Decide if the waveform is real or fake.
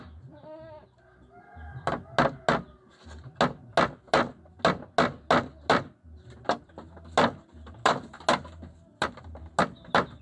real